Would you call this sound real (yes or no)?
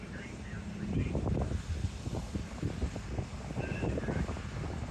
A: yes